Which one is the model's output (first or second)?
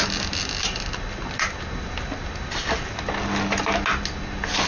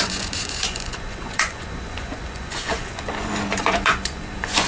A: second